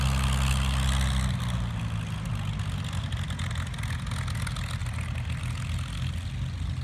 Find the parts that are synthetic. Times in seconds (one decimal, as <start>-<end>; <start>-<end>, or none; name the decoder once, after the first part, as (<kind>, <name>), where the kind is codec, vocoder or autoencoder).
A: none